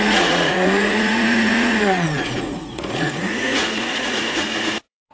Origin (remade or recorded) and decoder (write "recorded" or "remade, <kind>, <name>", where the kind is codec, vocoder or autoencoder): remade, vocoder, Vocos